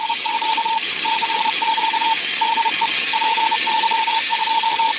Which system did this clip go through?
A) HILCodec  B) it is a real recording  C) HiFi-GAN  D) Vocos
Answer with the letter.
C